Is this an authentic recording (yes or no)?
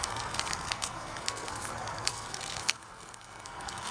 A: no